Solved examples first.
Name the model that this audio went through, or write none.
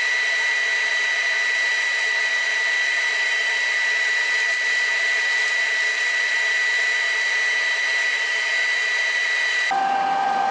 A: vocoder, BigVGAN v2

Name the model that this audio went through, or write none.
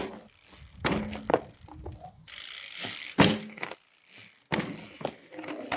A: none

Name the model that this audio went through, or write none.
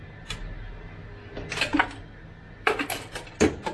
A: none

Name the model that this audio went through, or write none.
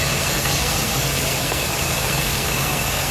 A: codec, SNAC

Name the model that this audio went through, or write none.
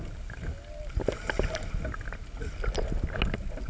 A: none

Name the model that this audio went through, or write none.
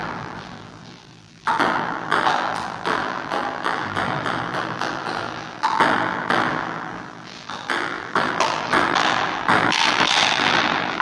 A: vocoder, BigVGAN v2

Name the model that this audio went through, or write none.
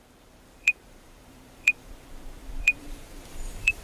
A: vocoder, BigVGAN v2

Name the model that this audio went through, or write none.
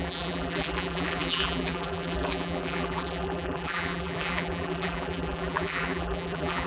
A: vocoder, BigVGAN v2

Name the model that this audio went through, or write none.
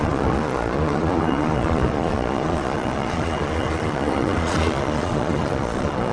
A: vocoder, Vocos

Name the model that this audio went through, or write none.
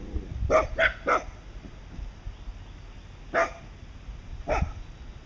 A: none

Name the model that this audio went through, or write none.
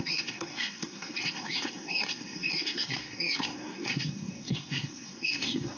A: codec, SNAC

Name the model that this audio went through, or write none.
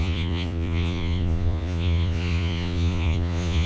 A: vocoder, Vocos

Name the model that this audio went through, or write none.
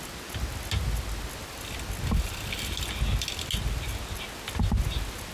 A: none